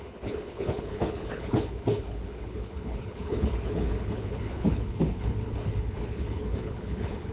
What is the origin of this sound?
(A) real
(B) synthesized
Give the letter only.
B